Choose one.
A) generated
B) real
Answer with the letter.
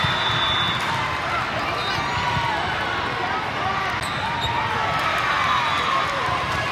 B